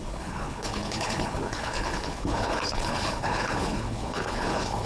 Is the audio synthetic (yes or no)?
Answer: yes